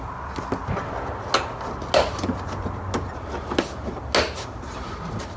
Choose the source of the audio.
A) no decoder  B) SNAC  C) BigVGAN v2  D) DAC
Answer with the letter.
A